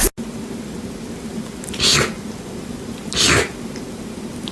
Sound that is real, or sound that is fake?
real